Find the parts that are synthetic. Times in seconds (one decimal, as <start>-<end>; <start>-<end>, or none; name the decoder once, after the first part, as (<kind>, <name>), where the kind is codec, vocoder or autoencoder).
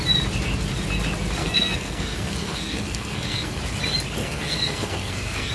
1.4-3.6 (codec, SNAC); 4.2-5.5